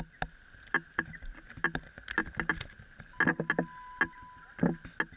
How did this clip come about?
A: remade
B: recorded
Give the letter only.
B